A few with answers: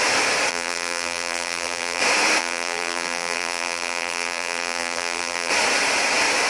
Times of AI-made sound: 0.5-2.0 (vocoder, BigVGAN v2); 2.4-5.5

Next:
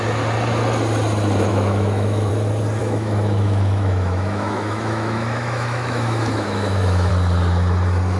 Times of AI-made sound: 1.5-2.3 (autoencoder, DAC-VAE); 2.8-7.1